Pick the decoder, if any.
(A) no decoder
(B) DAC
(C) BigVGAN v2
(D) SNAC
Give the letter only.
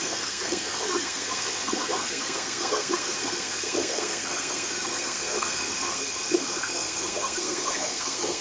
D